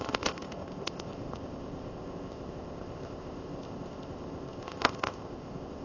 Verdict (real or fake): fake